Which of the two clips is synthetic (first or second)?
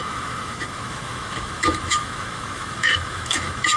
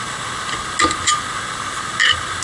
first